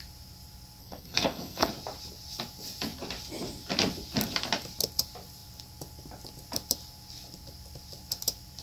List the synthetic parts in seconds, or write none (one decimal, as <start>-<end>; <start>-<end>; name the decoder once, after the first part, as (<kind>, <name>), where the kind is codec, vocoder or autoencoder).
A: 0.8-1.7 (codec, SNAC)